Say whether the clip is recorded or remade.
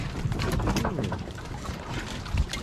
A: recorded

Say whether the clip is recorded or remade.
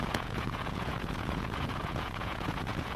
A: remade